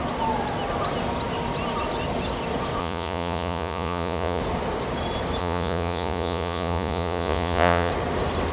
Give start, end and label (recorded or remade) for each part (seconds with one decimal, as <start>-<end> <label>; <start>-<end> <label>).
0.0-2.8 recorded; 2.8-4.4 remade; 4.4-5.4 recorded; 5.4-7.9 remade; 7.9-8.5 recorded